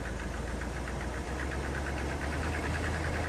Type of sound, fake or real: real